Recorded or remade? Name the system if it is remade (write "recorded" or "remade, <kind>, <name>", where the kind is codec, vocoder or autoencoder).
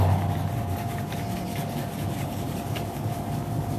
remade, codec, DAC